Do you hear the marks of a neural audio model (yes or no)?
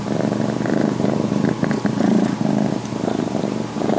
yes